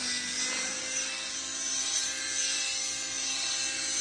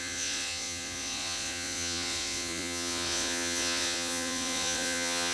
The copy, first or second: second